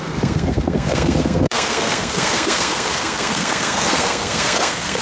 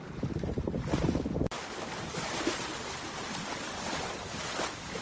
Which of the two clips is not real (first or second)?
first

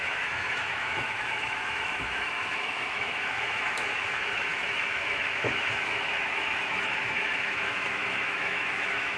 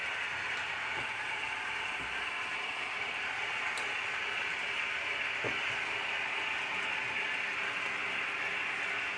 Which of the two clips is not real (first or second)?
first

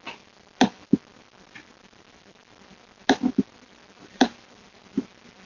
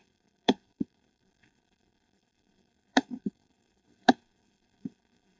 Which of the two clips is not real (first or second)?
second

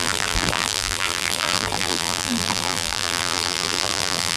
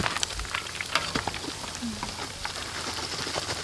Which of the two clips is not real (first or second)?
first